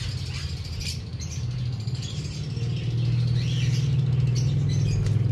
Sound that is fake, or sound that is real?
real